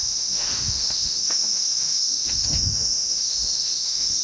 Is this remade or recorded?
remade